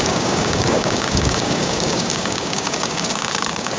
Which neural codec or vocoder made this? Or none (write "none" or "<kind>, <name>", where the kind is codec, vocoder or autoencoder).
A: codec, DAC